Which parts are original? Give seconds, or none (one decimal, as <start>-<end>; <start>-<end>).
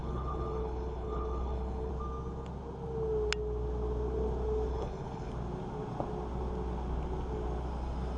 1.9-4.7; 5.3-8.2